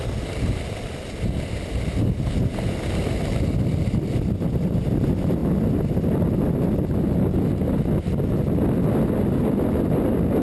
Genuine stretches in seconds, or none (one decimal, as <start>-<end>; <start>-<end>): 0.0-10.4

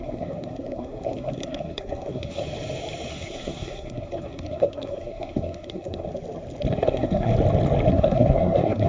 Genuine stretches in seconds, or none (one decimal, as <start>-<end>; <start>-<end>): 2.4-3.1; 6.1-6.7; 7.3-7.9

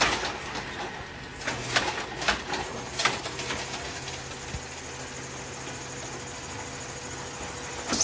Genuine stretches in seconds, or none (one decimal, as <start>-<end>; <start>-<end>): 0.0-8.0

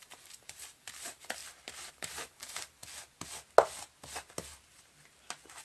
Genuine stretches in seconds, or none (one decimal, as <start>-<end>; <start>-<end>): 1.4-1.9; 2.8-5.6

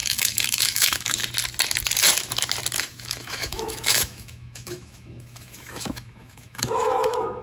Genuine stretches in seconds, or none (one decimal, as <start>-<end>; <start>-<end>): 1.2-2.8

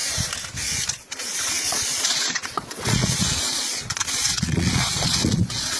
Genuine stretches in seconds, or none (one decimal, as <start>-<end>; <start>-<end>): 0.0-0.9

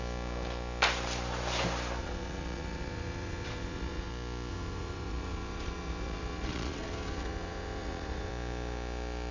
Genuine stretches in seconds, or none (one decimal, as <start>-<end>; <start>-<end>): 0.0-2.0; 4.1-4.5; 8.3-9.3